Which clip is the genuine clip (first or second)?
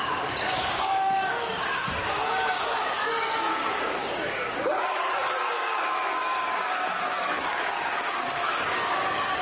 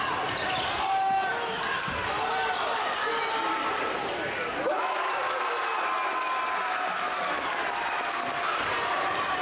second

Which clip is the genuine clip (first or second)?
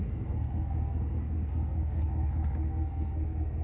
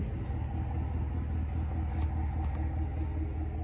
second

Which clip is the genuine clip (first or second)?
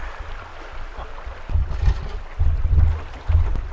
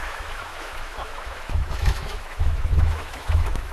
first